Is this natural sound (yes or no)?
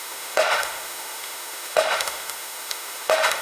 no